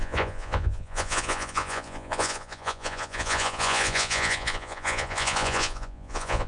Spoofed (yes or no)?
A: yes